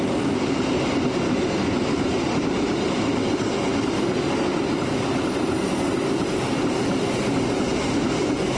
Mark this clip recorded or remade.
recorded